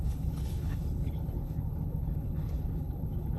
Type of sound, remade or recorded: remade